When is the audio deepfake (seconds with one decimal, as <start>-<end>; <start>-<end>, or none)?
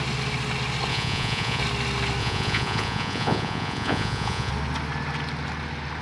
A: 0.9-1.6; 2.2-4.5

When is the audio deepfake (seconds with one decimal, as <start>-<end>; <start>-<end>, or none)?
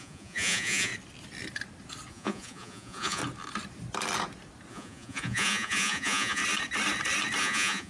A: 0.0-0.9; 2.1-3.2; 4.7-6.4; 7.4-7.9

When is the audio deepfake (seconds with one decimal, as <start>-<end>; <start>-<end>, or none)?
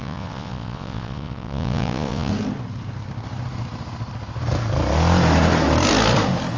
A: 0.0-2.3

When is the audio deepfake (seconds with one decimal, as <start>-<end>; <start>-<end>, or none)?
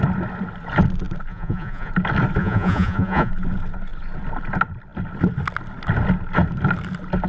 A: 1.3-1.9; 2.4-3.3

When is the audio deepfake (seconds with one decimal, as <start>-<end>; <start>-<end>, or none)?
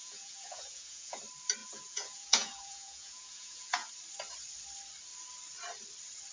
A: 0.0-1.2; 1.6-3.9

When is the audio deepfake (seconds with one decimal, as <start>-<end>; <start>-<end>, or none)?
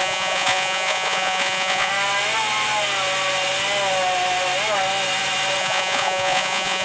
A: 0.0-1.9; 5.6-6.8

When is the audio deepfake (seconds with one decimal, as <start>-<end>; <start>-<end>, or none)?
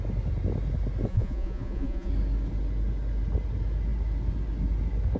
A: 1.1-2.1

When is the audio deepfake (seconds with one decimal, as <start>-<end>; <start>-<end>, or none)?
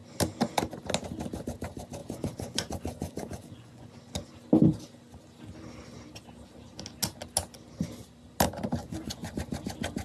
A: 2.0-3.9; 8.8-9.3